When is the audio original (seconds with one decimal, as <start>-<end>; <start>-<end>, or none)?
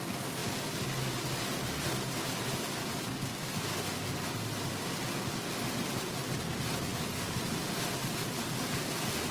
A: 0.0-9.3